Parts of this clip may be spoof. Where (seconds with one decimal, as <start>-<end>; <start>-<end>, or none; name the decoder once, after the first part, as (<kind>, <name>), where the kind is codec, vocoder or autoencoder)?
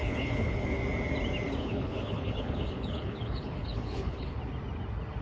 0.0-0.8 (codec, HILCodec); 1.6-4.4